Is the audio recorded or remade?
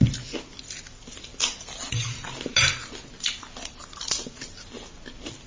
recorded